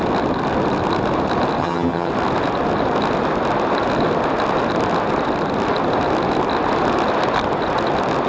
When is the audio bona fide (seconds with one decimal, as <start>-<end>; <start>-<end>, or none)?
0.0-1.6; 2.1-8.3